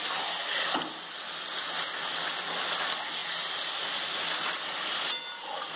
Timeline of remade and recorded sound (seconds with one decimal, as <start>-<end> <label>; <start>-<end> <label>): 0.0-5.8 recorded